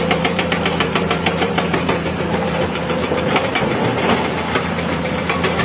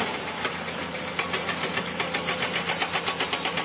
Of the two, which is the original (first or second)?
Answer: second